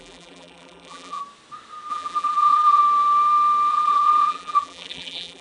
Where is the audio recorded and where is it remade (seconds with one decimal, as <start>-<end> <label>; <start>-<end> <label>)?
0.0-1.2 remade; 1.2-1.9 recorded; 1.9-2.8 remade; 2.8-3.7 recorded; 3.7-5.4 remade